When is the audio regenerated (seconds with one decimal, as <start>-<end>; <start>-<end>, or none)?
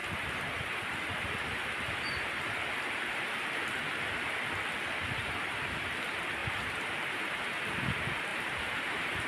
6.4-7.2; 8.3-9.3